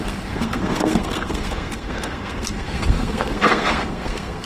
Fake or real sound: fake